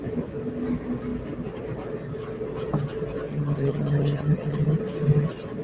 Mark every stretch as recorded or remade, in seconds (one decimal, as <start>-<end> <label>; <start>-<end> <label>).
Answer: 0.0-3.3 recorded; 3.3-4.8 remade; 4.8-5.6 recorded